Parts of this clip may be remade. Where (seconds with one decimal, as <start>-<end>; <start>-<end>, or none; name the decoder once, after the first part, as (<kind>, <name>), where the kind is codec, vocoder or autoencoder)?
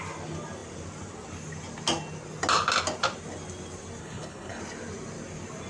4.0-4.6 (codec, HILCodec)